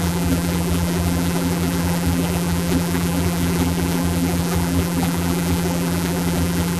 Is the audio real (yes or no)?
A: no